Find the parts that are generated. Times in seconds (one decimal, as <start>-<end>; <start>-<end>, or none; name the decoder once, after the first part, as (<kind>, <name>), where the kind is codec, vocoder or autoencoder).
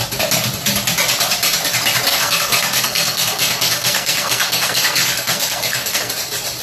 2.1-6.1 (codec, SNAC)